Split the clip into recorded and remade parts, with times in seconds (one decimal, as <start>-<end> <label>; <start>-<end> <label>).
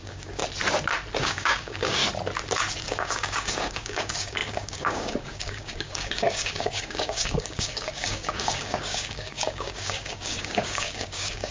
0.0-0.4 remade; 0.4-1.2 recorded; 1.2-2.0 remade; 2.0-2.8 recorded; 2.8-11.5 remade